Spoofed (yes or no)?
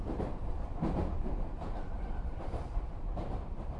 yes